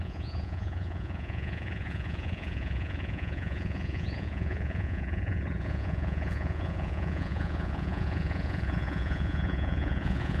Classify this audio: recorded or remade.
remade